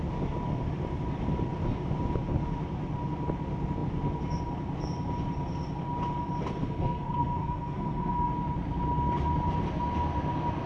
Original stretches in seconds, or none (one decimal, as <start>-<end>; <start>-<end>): 0.0-6.5; 8.3-10.7